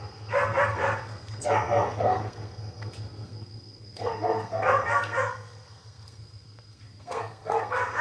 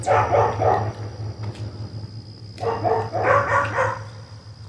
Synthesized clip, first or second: first